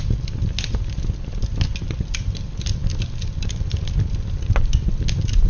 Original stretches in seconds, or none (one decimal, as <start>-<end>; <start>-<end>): 0.0-5.5